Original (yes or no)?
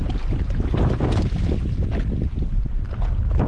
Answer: yes